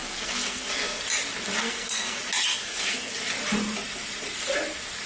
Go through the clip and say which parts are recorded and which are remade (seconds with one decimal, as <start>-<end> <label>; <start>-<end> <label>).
0.0-1.0 remade; 1.0-1.6 recorded; 1.6-2.2 remade; 2.2-2.6 recorded; 2.6-3.1 remade; 3.1-5.1 recorded